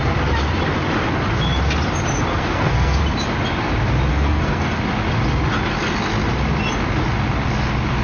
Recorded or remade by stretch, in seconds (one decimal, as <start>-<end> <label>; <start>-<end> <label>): 0.0-2.3 recorded; 2.3-3.0 remade; 3.0-4.1 recorded; 4.1-4.7 remade; 4.7-8.0 recorded